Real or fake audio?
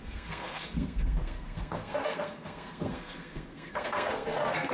fake